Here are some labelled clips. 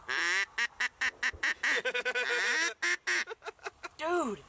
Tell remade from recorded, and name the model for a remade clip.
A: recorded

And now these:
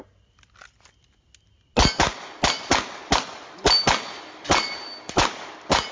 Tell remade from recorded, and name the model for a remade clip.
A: recorded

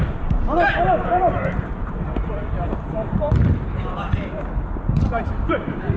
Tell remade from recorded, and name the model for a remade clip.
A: remade, vocoder, BigVGAN v2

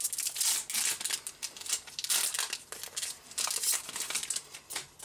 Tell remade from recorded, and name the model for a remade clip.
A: recorded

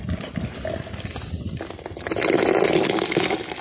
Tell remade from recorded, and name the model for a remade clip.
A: recorded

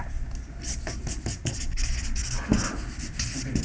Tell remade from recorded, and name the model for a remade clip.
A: recorded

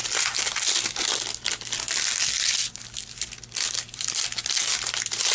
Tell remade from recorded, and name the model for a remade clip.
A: recorded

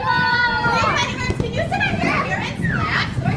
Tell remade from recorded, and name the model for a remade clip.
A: recorded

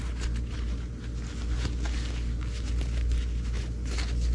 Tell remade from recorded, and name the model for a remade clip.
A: recorded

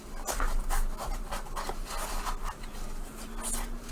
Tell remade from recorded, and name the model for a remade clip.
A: recorded